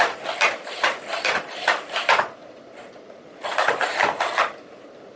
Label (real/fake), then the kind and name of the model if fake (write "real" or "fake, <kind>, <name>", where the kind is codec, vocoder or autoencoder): real